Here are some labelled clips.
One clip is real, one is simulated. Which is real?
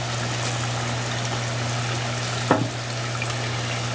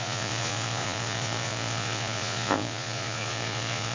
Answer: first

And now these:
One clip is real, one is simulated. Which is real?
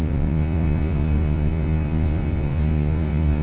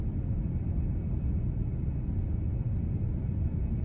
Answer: second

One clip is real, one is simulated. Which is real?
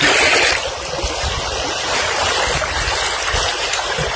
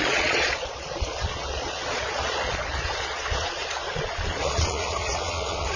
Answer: first